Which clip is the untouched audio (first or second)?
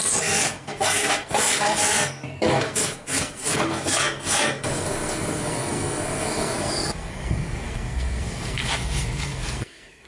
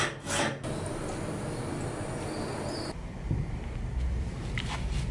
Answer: second